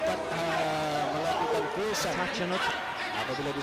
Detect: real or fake real